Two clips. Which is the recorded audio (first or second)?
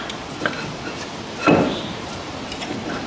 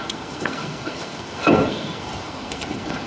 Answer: first